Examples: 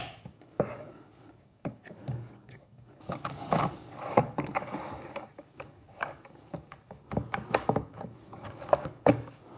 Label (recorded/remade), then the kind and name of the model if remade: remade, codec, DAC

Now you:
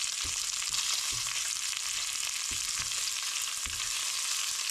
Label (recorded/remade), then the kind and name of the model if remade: recorded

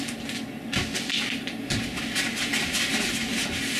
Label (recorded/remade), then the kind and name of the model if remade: recorded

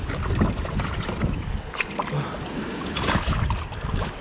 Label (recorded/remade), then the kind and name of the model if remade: recorded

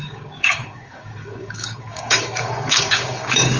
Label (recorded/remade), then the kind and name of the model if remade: remade, codec, DAC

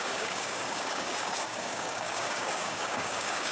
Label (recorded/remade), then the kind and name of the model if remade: remade, codec, DAC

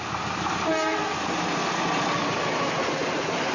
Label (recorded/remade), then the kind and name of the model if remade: recorded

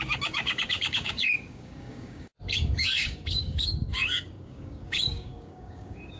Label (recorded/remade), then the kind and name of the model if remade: remade, codec, DAC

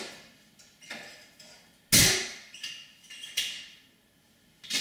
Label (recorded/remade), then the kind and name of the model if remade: recorded